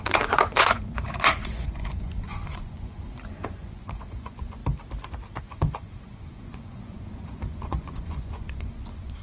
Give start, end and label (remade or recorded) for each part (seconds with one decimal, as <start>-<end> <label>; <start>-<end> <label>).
0.0-4.6 remade; 4.6-5.4 recorded; 5.4-9.2 remade